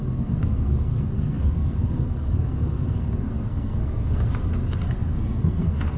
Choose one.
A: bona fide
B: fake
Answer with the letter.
B